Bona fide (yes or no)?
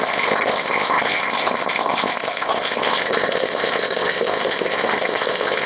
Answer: no